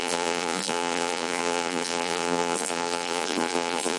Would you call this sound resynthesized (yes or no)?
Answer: yes